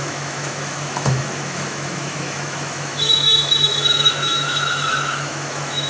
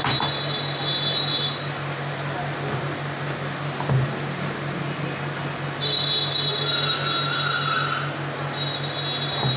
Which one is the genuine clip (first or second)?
second